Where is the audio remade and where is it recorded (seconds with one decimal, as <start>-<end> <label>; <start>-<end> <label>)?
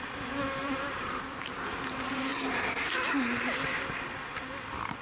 0.0-0.6 recorded; 0.6-1.6 remade; 1.6-5.0 recorded